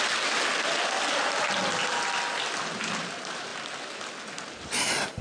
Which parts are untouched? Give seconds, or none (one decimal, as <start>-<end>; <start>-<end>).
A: 0.0-5.2

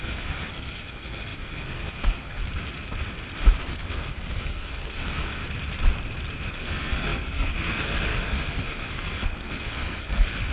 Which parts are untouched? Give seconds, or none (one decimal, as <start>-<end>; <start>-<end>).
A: 2.4-3.6; 5.4-6.5

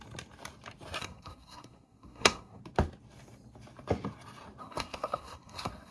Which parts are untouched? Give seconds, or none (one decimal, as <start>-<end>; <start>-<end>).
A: 0.0-1.0; 2.6-4.6

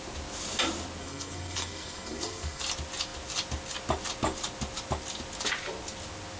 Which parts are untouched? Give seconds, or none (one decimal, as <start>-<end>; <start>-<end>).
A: 0.0-1.0; 2.6-6.4

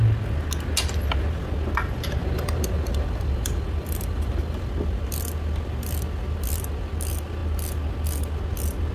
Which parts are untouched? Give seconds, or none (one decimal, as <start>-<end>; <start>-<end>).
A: 0.0-2.2; 4.7-8.9